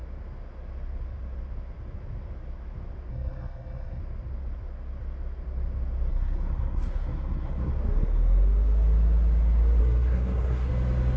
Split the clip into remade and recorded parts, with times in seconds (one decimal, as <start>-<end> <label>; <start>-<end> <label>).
0.0-3.1 recorded; 3.1-4.0 remade; 4.0-6.1 recorded; 6.1-7.7 remade; 7.7-9.8 recorded; 9.8-10.7 remade; 10.7-11.2 recorded

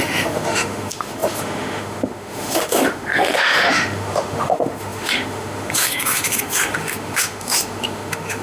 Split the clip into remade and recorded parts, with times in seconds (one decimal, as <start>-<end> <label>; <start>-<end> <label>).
0.0-8.4 remade

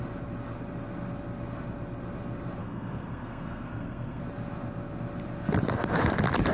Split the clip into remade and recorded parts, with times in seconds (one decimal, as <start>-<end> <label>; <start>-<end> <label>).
0.0-2.6 recorded; 2.6-4.2 remade; 4.2-6.5 recorded

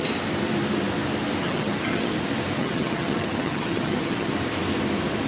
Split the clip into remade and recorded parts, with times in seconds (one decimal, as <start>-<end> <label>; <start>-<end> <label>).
0.0-1.4 recorded; 1.4-2.2 remade; 2.2-2.6 recorded; 2.6-4.3 remade; 4.3-5.3 recorded

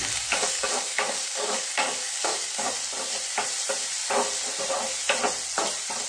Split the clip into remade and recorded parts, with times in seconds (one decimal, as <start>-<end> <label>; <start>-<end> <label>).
0.0-2.7 remade; 2.7-6.1 recorded

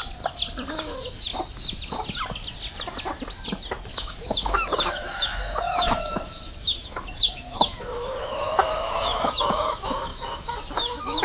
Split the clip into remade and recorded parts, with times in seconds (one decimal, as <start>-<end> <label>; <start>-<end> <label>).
0.0-0.7 recorded; 0.7-1.3 remade; 1.3-3.9 recorded; 3.9-11.2 remade